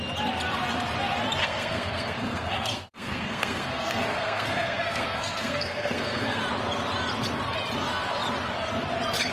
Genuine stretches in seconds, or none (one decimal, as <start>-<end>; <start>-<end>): 0.0-1.4; 6.4-9.3